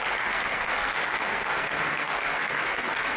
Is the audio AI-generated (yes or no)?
yes